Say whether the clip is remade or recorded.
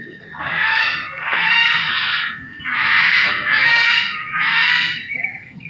remade